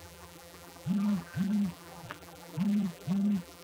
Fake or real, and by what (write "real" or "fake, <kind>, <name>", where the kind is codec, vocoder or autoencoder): fake, vocoder, BigVGAN v2